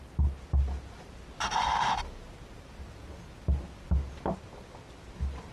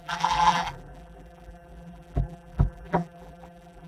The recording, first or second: first